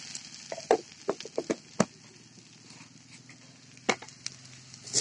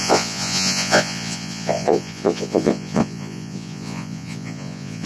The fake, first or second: second